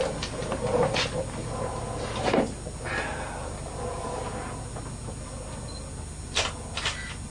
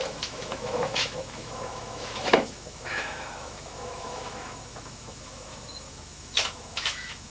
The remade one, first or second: second